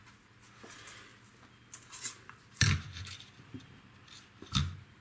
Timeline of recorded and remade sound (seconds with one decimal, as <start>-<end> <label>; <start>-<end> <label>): 0.0-5.0 recorded